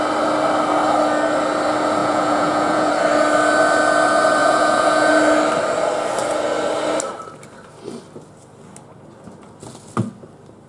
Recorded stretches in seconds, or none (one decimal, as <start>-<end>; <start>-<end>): 0.0-2.0; 2.9-4.4; 5.1-10.7